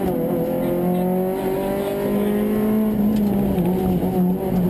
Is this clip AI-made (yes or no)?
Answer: no